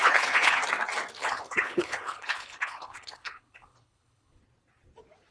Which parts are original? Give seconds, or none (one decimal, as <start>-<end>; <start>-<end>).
0.6-1.2; 4.4-5.3